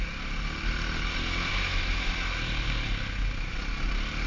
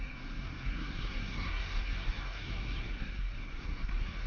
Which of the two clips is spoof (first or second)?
second